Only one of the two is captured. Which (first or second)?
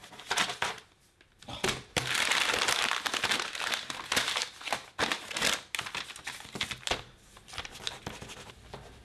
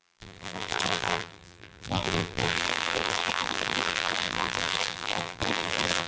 first